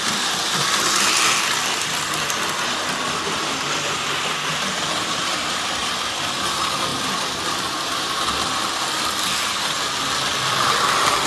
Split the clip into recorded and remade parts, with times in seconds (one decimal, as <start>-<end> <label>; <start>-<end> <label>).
0.0-6.9 recorded; 6.9-9.4 remade; 9.4-11.3 recorded